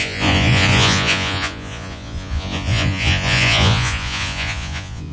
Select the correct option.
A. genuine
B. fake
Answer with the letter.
B